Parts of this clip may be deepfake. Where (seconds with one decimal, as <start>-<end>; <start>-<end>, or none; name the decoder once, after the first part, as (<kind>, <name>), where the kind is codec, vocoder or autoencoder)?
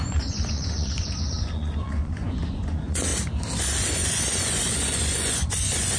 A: 0.0-3.1 (vocoder, Vocos); 3.6-6.0